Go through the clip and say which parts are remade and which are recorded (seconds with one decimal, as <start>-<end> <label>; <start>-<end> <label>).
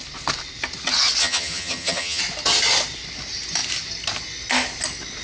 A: 0.0-1.2 recorded; 1.2-2.2 remade; 2.2-5.2 recorded